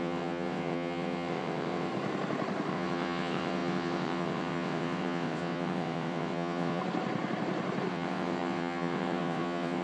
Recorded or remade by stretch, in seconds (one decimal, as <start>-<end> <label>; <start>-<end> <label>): 0.0-1.9 remade; 1.9-2.7 recorded; 2.7-6.8 remade; 6.8-7.9 recorded; 7.9-9.8 remade